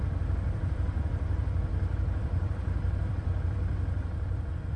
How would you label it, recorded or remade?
remade